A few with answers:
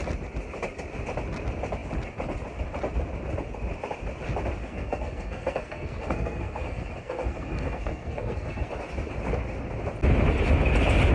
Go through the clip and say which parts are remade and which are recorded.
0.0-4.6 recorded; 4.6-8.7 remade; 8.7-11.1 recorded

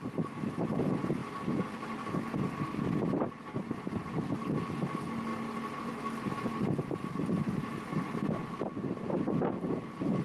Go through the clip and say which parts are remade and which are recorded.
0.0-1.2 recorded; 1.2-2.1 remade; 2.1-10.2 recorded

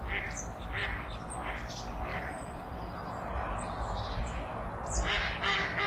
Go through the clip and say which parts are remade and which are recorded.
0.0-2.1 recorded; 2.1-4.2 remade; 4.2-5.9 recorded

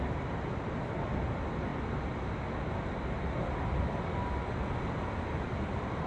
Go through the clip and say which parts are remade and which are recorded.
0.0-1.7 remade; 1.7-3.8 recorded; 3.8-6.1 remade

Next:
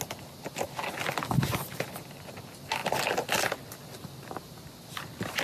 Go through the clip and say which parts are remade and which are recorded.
0.0-5.4 recorded

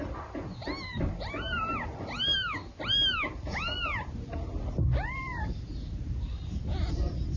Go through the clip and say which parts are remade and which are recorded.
0.0-7.4 remade

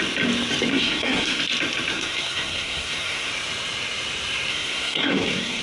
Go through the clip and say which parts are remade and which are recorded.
0.0-0.7 recorded; 0.7-1.4 remade; 1.4-1.9 recorded; 1.9-3.3 remade; 3.3-4.5 recorded; 4.5-5.6 remade

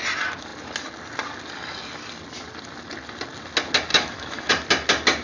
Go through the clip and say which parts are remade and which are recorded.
0.0-3.9 recorded; 3.9-4.5 remade; 4.5-5.2 recorded